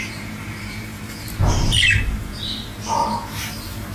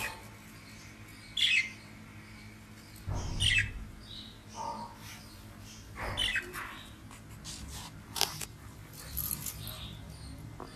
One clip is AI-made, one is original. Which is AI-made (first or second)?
first